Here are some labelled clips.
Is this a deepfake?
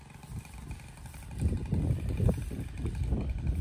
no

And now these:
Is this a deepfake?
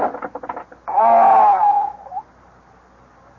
no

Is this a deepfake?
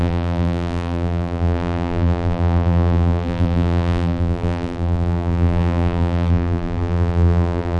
yes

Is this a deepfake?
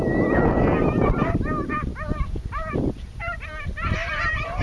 no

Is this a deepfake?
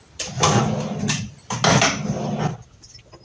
no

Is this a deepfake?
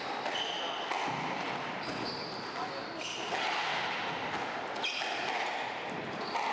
no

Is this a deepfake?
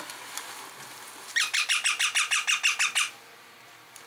no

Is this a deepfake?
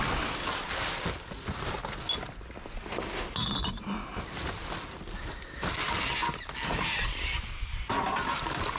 no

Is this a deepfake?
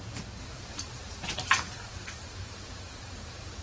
yes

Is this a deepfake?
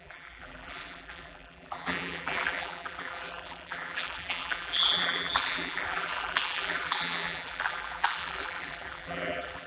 yes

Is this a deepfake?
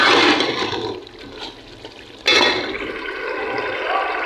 no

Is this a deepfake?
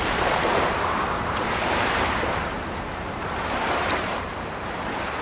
yes